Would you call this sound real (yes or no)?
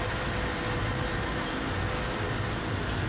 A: yes